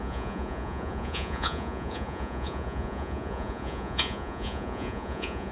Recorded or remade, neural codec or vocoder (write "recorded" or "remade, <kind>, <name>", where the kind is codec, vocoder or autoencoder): remade, vocoder, Vocos